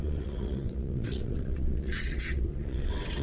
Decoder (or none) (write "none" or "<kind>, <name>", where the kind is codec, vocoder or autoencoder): vocoder, WaveNeXt